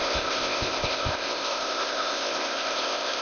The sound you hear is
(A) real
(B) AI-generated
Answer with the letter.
B